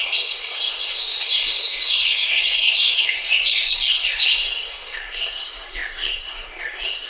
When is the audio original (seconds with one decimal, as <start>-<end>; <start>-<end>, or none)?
none